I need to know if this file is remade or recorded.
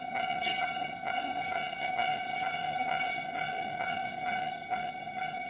remade